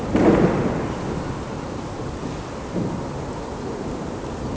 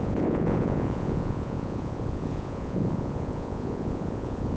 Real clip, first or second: first